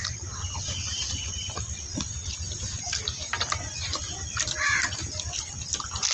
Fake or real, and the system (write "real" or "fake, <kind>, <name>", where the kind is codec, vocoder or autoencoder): real